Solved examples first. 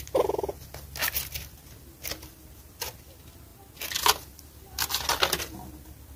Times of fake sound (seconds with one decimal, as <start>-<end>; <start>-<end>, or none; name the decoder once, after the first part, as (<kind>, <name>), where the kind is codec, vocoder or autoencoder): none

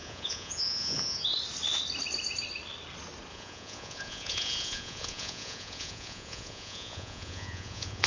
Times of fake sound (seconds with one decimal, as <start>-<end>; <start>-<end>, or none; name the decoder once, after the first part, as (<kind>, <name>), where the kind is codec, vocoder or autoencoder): 0.0-1.2 (vocoder, Vocos); 3.3-8.1

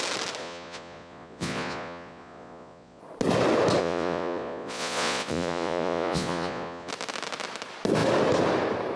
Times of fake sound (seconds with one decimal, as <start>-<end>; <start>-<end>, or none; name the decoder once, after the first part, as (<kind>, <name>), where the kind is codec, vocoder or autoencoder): 0.4-3.0 (vocoder, Vocos); 3.8-6.9

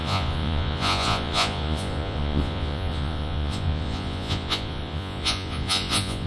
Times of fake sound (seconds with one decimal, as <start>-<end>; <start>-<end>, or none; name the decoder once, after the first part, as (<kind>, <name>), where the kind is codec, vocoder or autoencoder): 0.0-6.3 (vocoder, Vocos)

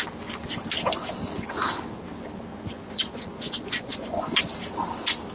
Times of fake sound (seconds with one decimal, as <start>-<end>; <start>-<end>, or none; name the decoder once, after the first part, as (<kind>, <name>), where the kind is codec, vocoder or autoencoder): 2.5-4.4 (vocoder, Vocos)

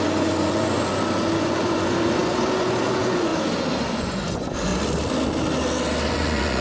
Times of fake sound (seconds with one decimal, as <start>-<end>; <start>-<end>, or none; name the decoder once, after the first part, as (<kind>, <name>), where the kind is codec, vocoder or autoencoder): 0.0-0.9 (vocoder, Vocos); 1.4-3.3; 3.9-4.7; 6.1-6.6

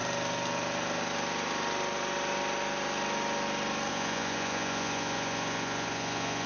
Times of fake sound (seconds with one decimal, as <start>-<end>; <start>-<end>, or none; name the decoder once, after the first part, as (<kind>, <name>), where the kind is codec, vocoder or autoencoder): 3.9-6.5 (vocoder, Vocos)